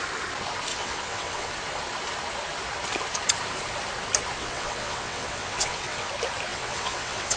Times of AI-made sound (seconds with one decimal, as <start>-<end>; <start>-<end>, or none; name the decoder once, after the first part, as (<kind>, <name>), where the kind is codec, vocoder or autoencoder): 0.7-1.5 (vocoder, WaveNeXt); 4.4-6.1; 6.5-7.4

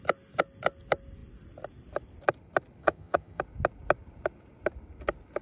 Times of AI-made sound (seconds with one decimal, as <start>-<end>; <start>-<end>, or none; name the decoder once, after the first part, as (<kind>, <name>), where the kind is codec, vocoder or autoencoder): 2.8-3.4 (vocoder, HiFi-GAN)

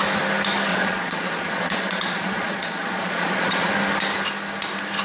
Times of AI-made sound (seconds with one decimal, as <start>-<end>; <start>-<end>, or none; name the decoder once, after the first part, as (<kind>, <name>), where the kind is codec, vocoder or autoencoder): 0.7-3.7 (vocoder, Vocos)

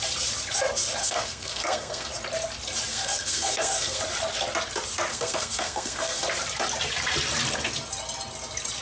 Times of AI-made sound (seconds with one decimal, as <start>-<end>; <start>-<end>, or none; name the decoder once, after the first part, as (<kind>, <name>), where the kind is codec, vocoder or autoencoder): 1.0-2.1 (codec, SNAC); 2.9-4.0; 5.1-6.2

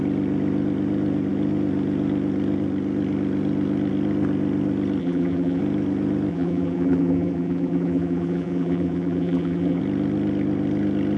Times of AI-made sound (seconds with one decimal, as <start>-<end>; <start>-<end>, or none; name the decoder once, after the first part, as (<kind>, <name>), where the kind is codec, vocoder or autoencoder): 5.0-5.6 (vocoder, BigVGAN v2); 6.3-9.8

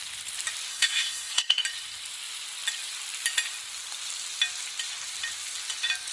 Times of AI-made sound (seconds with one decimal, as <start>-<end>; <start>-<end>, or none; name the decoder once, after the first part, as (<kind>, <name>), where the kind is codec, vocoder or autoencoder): 0.7-1.6 (codec, SNAC)